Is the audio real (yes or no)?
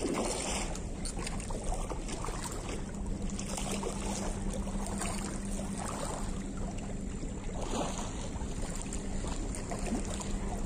yes